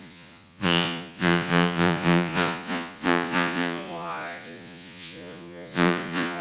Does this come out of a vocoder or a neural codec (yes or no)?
yes